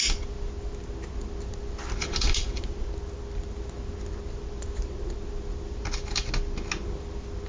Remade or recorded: recorded